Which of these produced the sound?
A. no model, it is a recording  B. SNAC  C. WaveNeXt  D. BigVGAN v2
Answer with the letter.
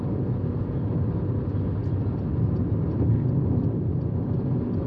A